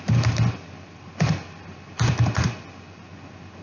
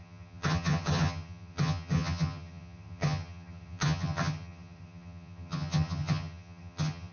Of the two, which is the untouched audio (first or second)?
first